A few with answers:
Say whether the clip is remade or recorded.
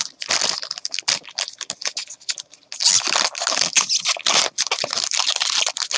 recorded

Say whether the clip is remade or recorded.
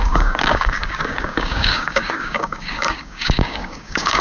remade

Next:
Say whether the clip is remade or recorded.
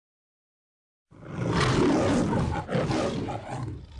recorded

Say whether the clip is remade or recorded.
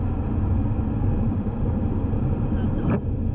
recorded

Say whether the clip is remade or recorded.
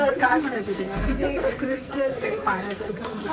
remade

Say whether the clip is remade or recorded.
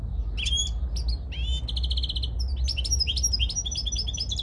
recorded